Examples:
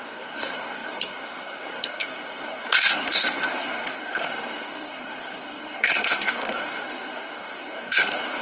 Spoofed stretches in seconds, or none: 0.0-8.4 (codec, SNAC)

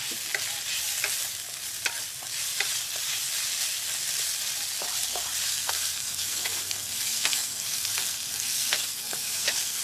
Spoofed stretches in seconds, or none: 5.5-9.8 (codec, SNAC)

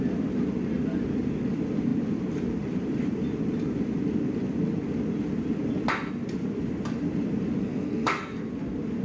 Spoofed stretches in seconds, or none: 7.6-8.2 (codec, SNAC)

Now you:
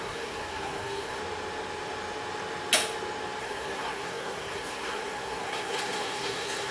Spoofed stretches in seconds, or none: 0.0-1.2 (codec, SNAC); 3.4-6.7

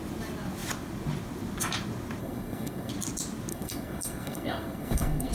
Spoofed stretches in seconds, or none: 2.2-2.9 (codec, SNAC); 3.5-5.3